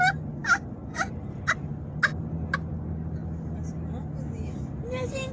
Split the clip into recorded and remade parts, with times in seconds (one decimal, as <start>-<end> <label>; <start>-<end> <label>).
0.0-5.3 recorded